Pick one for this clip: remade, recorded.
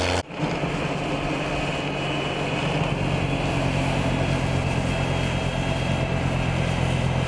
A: recorded